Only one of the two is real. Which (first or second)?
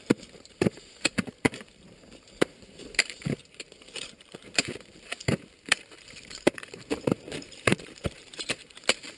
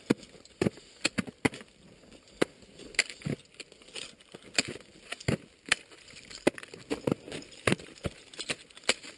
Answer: second